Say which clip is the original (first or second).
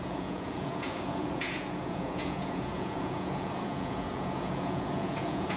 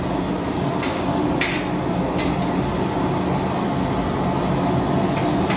second